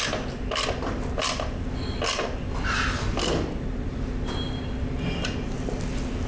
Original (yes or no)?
yes